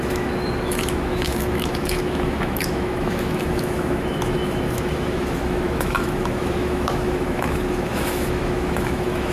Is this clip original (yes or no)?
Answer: no